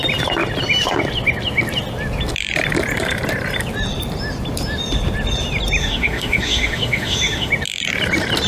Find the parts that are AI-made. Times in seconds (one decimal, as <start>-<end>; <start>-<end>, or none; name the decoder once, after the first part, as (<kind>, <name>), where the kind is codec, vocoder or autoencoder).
5.8-7.5 (autoencoder, DAC-VAE)